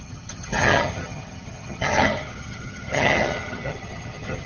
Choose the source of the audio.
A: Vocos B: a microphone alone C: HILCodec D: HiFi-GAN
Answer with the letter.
D